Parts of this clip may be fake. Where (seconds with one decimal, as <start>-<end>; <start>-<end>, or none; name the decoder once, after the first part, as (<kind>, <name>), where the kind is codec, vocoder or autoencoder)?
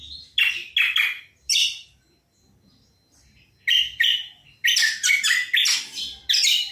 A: none